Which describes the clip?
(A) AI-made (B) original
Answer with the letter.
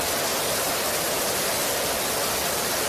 B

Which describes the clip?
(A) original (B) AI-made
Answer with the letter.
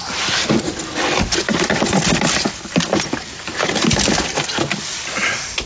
A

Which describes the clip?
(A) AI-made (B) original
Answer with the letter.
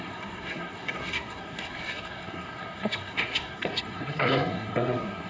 A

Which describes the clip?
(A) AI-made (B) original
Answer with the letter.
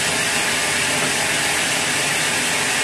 B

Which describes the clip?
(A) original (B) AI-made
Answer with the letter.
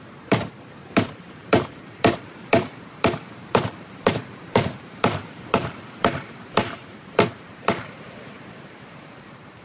B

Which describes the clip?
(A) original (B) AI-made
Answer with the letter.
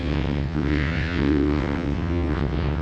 B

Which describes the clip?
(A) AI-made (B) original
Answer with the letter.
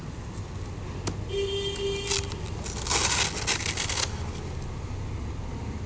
B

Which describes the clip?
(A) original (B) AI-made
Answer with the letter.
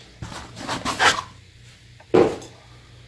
A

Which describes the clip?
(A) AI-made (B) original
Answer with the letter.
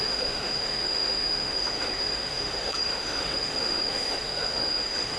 A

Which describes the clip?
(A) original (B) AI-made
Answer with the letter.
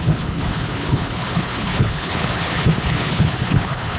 B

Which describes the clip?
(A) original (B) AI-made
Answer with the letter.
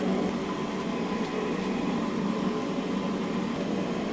A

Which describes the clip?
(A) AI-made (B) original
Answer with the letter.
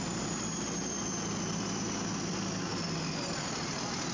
B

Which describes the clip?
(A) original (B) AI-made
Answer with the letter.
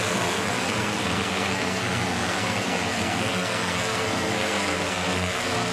B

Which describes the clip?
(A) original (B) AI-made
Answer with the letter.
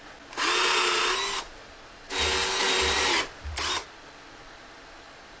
A